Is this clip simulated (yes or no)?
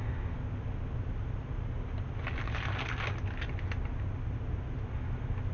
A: no